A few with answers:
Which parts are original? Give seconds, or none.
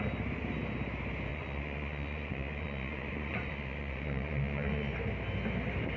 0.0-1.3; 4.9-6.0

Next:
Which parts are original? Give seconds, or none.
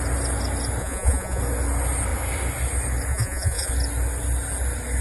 0.0-0.8; 1.4-3.1; 3.7-5.0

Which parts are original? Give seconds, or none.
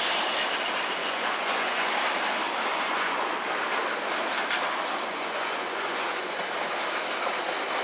0.0-1.0; 1.9-2.7; 3.3-5.1; 6.4-7.8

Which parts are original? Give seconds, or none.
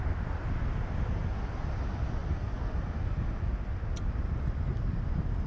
0.0-5.5